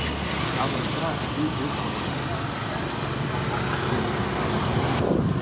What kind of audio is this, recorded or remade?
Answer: recorded